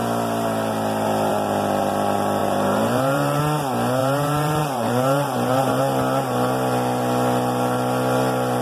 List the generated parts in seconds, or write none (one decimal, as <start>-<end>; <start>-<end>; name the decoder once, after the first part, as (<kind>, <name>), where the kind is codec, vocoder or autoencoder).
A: 2.4-3.4 (vocoder, BigVGAN v2); 4.0-5.8